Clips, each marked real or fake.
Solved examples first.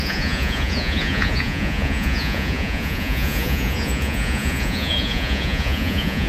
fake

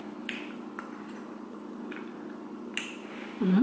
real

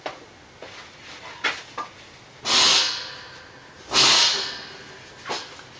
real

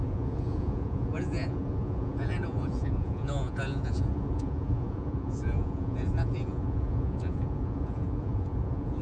fake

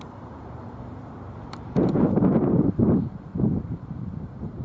fake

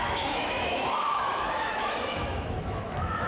fake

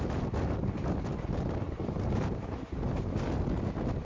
real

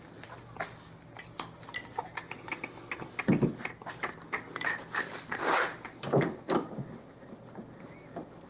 real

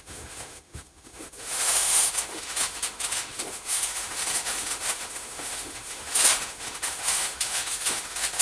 fake